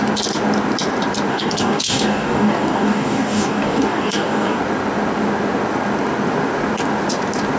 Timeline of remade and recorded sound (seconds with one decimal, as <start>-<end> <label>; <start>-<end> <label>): 0.0-1.3 recorded; 1.3-4.6 remade; 4.6-7.6 recorded